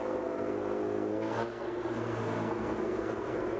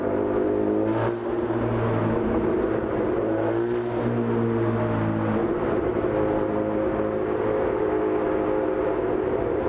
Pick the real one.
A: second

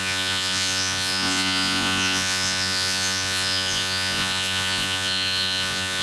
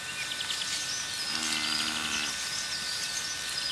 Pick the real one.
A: second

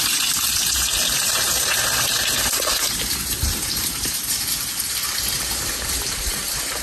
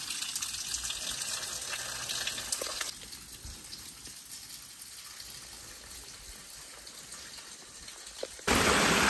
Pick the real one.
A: second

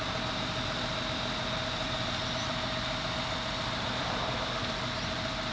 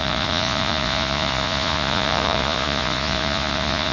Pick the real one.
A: first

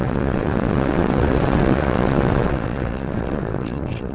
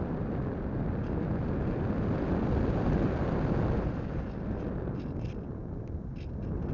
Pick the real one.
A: second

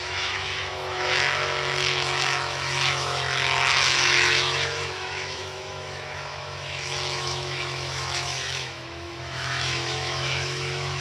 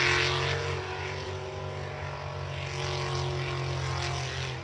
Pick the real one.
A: second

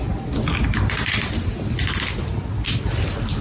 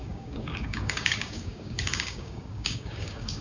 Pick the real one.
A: first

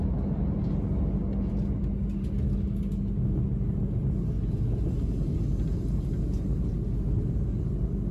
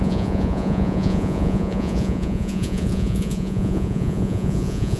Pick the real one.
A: first